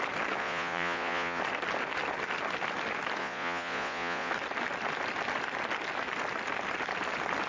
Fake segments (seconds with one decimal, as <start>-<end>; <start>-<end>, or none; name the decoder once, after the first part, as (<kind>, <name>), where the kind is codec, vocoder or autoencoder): 0.4-1.4 (vocoder, Vocos); 3.2-4.3